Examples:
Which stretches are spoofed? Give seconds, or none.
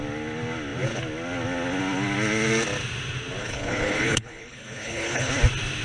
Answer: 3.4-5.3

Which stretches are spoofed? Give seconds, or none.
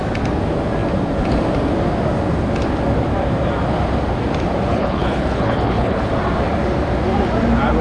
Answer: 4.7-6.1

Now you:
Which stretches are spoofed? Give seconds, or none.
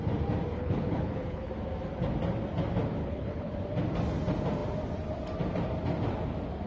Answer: 0.6-1.5; 3.0-3.6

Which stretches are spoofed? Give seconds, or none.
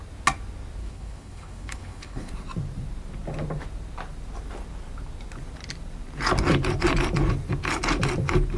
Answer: 0.8-2.3